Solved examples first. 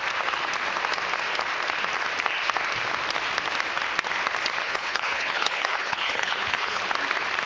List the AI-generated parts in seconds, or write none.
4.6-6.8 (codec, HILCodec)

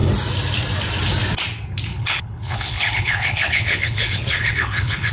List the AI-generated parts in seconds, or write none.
1.9-5.1 (codec, HILCodec)